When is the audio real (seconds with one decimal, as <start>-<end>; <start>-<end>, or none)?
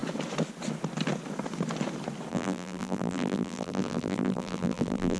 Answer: 0.0-2.3